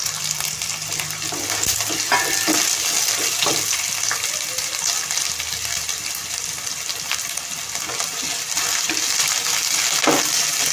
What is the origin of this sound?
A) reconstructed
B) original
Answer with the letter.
B